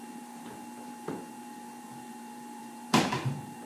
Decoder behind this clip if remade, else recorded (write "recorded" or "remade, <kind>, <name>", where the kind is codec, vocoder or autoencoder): remade, vocoder, BigVGAN v2